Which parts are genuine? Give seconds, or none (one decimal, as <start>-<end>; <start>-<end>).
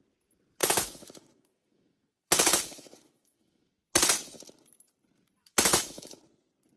0.0-0.6; 3.7-5.4; 6.2-6.8